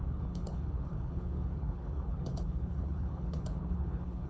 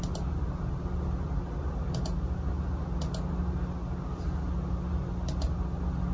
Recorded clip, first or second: second